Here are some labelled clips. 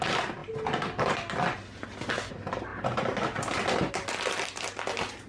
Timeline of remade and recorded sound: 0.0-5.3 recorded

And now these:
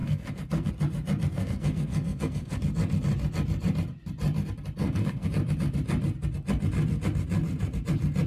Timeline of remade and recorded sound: 0.0-0.7 remade; 0.7-1.3 recorded; 1.3-2.6 remade; 2.6-4.8 recorded; 4.8-5.3 remade; 5.3-8.3 recorded

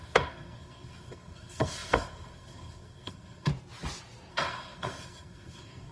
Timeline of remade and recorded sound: 0.0-3.5 remade; 3.5-4.3 recorded; 4.3-5.9 remade

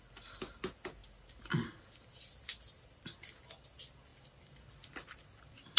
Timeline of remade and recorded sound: 0.0-5.8 recorded

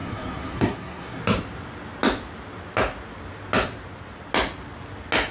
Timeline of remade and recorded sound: 0.0-1.2 remade; 1.2-5.3 recorded

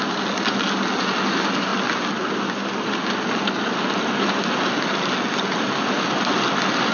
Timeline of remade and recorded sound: 0.0-6.9 recorded

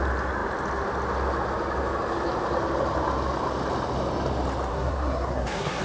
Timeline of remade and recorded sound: 0.0-4.7 recorded; 4.7-5.8 remade

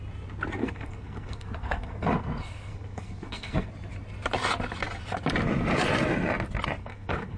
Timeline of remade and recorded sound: 0.0-0.6 recorded; 0.6-3.7 remade; 3.7-6.8 recorded; 6.8-7.4 remade